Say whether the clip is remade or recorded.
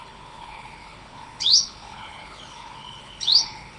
remade